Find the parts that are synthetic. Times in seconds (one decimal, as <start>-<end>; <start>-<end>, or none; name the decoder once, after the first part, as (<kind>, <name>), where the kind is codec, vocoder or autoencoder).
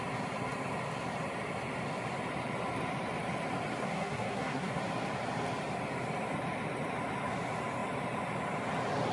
3.8-4.8 (codec, SNAC)